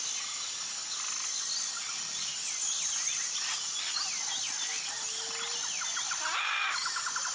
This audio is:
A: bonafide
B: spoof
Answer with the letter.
A